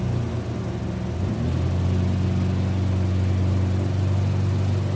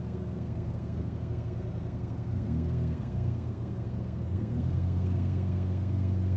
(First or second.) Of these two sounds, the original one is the first